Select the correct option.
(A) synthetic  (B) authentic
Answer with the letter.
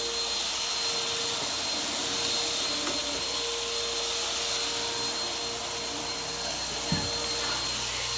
B